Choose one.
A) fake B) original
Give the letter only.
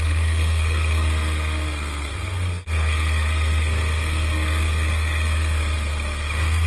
A